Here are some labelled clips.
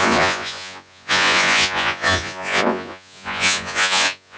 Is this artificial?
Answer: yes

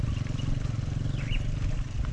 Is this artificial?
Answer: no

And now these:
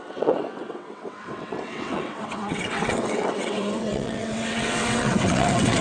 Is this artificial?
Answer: yes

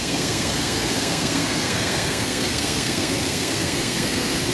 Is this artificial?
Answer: yes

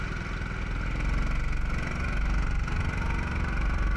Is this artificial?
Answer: no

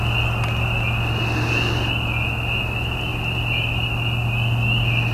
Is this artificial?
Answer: no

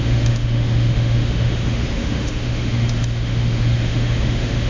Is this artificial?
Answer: yes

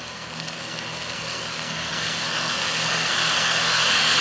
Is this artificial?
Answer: yes